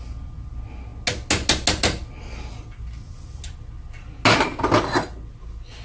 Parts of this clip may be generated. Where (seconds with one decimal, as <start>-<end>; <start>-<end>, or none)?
none